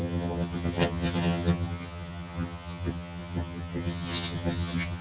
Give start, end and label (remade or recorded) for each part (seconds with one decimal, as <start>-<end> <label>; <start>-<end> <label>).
0.0-5.0 remade